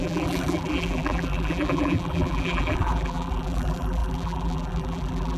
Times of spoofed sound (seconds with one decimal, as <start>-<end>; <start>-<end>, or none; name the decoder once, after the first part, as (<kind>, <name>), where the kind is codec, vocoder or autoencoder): 0.0-5.4 (vocoder, BigVGAN v2)